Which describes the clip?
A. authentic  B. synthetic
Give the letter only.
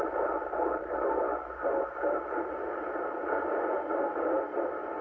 A